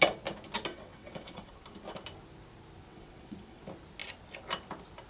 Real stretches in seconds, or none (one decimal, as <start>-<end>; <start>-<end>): 0.0-0.7; 1.5-2.9; 3.6-5.1